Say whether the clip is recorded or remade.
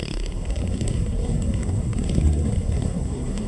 remade